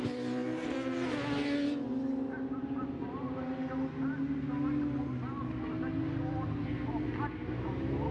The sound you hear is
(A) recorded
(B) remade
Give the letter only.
A